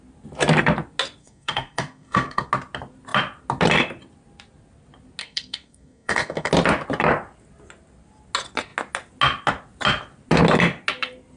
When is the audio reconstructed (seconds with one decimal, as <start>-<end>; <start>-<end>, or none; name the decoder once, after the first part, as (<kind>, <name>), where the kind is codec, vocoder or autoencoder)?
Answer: 1.2-2.5 (codec, SNAC); 5.2-6.5